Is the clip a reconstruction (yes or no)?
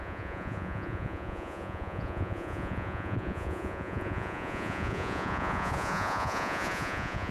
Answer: yes